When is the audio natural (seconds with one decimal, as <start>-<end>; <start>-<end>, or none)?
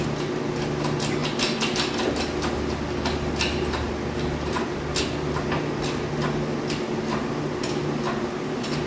0.0-8.9